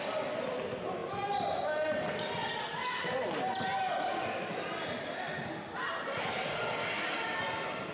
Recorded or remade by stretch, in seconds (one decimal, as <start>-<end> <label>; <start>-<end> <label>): 0.0-6.5 recorded; 6.5-7.4 remade; 7.4-7.9 recorded